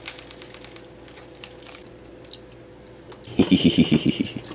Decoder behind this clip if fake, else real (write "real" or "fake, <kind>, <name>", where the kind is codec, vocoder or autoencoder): real